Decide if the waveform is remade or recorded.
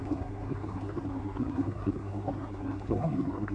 remade